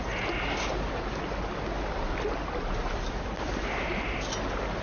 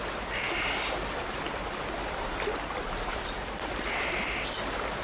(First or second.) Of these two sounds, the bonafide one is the first